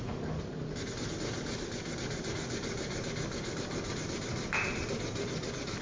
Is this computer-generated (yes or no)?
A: no